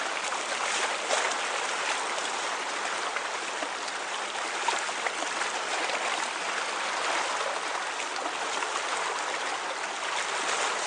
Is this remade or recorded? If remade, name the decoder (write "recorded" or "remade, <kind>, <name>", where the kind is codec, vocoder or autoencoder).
recorded